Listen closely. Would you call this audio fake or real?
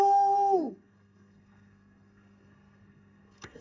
fake